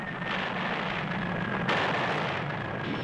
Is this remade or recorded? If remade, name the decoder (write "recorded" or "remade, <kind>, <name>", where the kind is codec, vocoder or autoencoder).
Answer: recorded